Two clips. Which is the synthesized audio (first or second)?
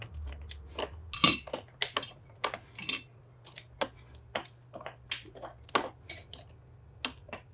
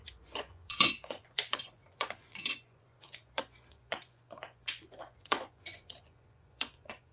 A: second